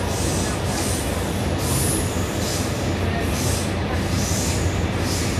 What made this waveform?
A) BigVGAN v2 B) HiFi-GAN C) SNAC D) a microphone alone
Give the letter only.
D